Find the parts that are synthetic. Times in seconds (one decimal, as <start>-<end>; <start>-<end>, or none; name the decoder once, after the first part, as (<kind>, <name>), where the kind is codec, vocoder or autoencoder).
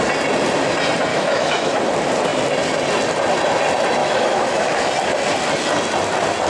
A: 1.1-1.8 (autoencoder, DAC-VAE); 4.0-4.9